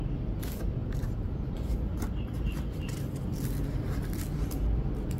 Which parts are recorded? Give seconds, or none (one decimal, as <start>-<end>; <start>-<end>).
0.0-0.8; 2.1-5.2